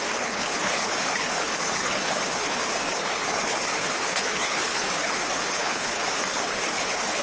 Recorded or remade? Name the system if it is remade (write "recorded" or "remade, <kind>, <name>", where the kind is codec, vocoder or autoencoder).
remade, codec, HILCodec